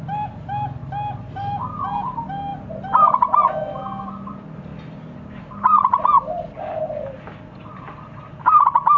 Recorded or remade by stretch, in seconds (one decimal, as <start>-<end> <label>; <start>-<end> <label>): 0.0-9.0 recorded